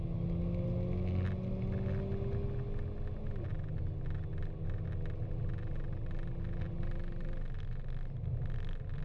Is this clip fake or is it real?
real